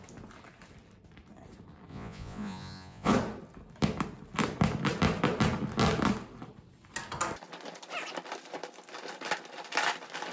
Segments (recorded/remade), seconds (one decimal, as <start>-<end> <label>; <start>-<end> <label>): 0.0-1.9 recorded; 1.9-3.1 remade; 3.1-10.3 recorded

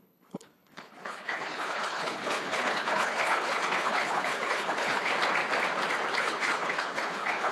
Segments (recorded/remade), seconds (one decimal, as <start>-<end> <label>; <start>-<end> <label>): 0.0-5.1 remade; 5.1-6.2 recorded; 6.2-7.5 remade

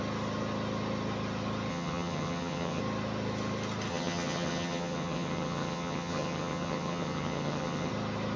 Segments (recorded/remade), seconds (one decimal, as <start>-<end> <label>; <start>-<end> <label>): 0.0-1.7 recorded; 1.7-2.8 remade; 2.8-3.9 recorded; 3.9-7.9 remade; 7.9-8.4 recorded

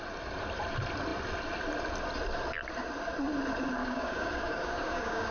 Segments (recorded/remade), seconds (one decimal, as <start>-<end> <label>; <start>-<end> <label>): 0.0-3.8 recorded; 3.8-5.3 remade

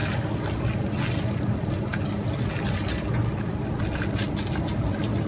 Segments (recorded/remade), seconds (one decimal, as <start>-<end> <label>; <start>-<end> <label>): 0.0-5.3 recorded